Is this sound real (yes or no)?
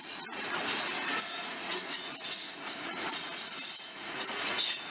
no